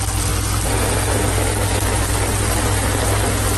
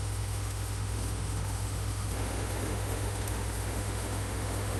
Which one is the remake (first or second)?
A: second